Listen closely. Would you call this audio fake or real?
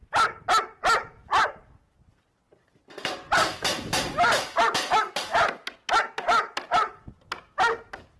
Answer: real